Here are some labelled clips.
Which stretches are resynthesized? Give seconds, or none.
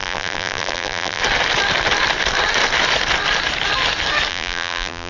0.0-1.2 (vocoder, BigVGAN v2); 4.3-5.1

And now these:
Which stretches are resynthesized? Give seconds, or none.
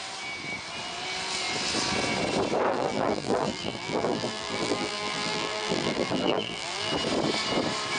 2.7-6.9 (vocoder, BigVGAN v2)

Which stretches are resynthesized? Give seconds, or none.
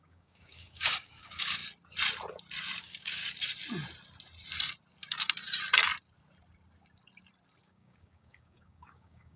0.0-1.6 (codec, DAC); 2.8-3.2; 7.6-9.4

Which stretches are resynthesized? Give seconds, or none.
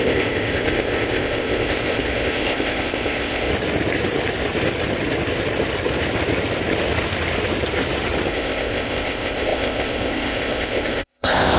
0.0-3.5 (codec, ZipCodec); 8.3-11.6